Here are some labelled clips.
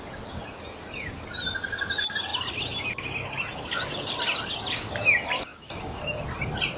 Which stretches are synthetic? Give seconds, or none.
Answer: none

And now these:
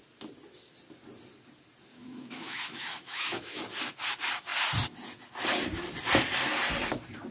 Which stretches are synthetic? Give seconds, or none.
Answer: 1.9-3.6